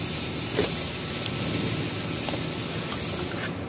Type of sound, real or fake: real